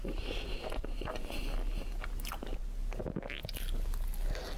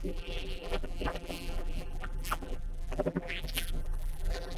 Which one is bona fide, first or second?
first